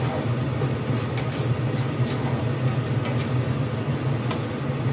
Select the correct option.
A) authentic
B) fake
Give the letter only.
A